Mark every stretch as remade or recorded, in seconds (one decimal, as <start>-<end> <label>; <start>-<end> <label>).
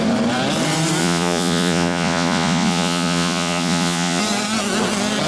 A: 0.0-1.0 recorded; 1.0-4.2 remade; 4.2-5.3 recorded